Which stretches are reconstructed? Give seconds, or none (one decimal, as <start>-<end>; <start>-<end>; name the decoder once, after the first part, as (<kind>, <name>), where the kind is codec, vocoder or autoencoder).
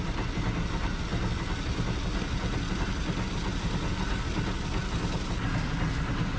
none